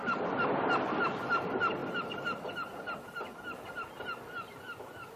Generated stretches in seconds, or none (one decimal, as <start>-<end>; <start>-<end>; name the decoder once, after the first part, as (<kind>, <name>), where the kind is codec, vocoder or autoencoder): none